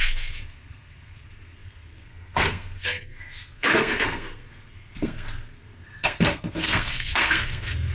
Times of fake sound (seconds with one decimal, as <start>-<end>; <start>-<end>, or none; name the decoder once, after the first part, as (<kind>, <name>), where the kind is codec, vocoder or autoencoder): 0.0-7.9 (codec, SNAC)